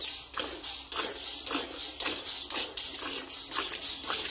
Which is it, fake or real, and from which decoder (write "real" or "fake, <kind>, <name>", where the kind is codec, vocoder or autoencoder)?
real